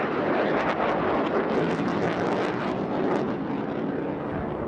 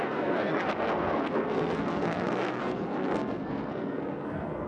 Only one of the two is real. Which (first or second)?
first